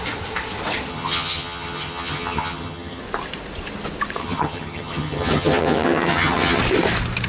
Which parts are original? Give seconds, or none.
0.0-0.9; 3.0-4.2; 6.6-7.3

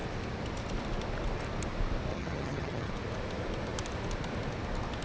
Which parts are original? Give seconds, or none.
0.0-2.1; 2.9-5.0

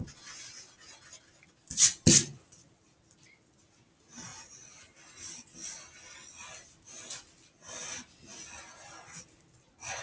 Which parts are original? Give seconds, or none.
0.0-10.0

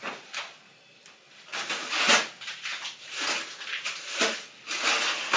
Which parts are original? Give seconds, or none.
0.0-5.4